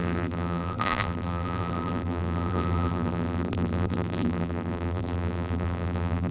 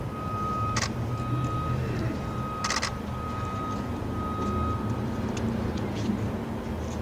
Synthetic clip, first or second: first